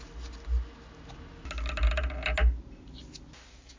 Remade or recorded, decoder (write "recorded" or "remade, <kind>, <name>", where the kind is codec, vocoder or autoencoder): recorded